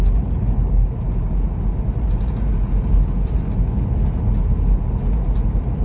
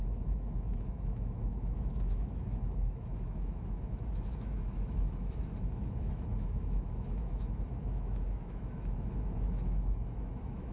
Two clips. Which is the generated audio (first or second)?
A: second